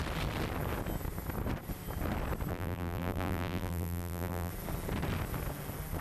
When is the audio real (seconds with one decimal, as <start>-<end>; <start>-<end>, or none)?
0.0-2.5; 4.5-6.0

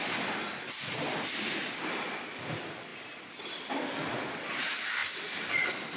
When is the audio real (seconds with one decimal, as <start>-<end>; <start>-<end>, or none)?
none

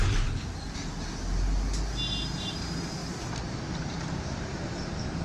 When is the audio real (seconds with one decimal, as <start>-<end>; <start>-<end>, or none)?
0.0-3.0

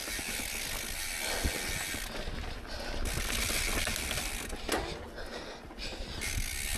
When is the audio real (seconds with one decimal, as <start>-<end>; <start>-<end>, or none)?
0.0-6.8

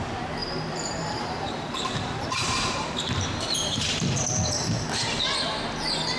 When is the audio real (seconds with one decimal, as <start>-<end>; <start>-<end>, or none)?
0.0-0.4; 4.1-6.2

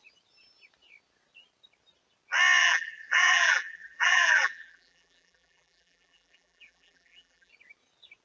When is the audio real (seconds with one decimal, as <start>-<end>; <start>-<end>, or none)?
0.0-2.6; 7.5-8.2

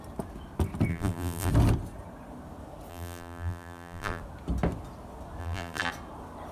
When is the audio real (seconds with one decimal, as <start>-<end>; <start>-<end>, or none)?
0.0-0.9; 1.5-2.9; 4.2-5.4; 5.9-6.5

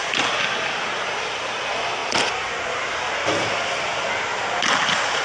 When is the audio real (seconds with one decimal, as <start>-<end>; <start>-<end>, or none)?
0.0-5.2